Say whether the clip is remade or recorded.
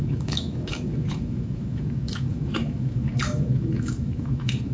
remade